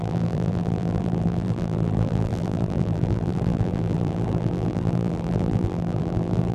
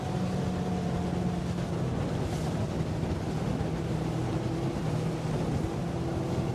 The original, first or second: second